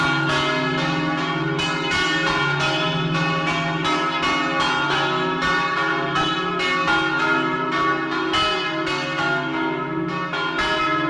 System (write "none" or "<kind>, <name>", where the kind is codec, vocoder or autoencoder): none